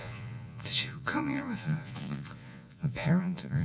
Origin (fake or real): fake